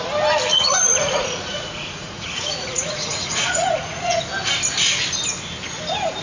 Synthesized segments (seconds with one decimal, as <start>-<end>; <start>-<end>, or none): 0.5-4.2